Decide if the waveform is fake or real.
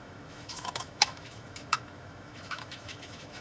fake